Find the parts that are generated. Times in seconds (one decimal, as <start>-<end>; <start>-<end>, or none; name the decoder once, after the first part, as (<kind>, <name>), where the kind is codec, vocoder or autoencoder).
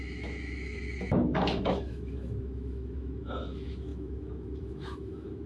0.0-5.5 (autoencoder, DAC-VAE)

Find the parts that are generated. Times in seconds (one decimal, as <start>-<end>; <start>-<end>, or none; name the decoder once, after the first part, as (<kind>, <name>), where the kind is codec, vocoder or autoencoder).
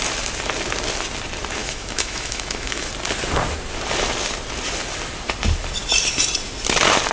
1.6-2.9 (autoencoder, DAC-VAE)